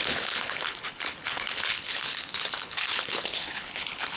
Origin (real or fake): fake